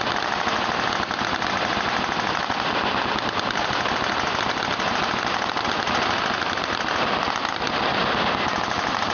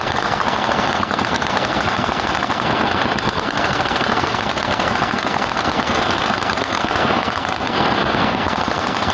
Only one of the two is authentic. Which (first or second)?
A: first